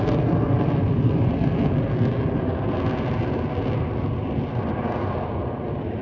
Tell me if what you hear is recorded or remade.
recorded